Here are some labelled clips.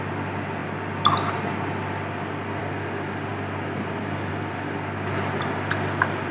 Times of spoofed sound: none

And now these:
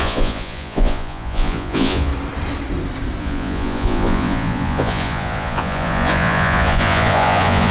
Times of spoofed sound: 0.0-2.1; 3.2-7.7

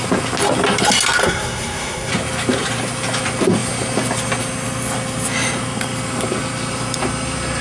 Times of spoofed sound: 1.2-2.1

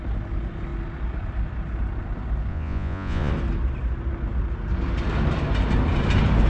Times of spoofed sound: 2.5-3.3